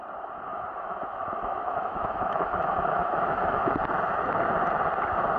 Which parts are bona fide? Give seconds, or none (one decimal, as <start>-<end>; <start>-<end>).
0.0-0.5; 3.7-5.4